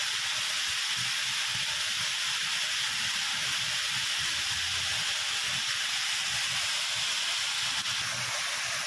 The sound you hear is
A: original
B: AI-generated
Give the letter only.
A